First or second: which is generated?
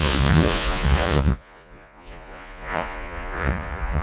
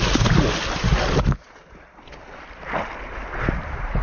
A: first